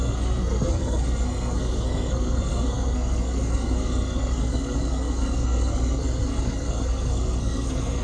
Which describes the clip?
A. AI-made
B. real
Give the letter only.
A